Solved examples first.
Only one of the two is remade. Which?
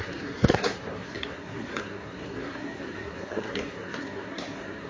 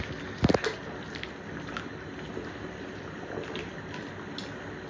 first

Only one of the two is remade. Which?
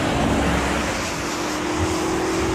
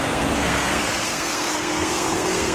second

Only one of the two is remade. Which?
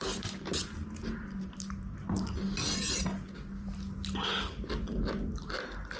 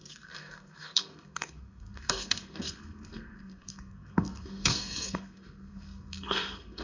second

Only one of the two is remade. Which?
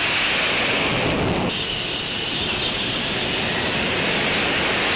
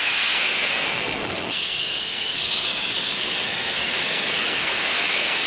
second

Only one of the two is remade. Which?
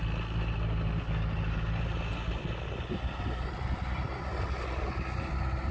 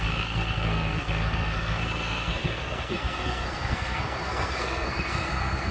second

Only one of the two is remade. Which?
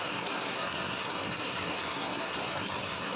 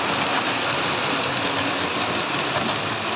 first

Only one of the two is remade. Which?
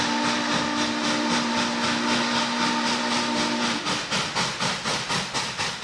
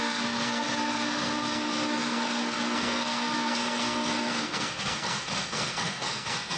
second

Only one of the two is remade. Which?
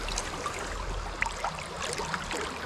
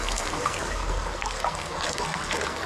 second